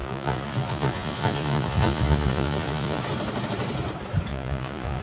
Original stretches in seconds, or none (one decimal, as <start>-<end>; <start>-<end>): 3.0-4.3